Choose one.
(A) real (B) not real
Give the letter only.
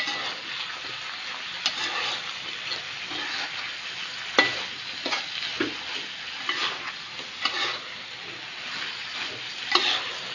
A